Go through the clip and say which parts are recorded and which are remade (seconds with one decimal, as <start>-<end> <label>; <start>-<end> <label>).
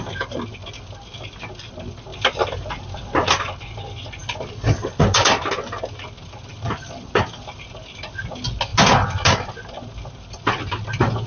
0.0-6.5 recorded; 6.5-7.6 remade; 7.6-11.3 recorded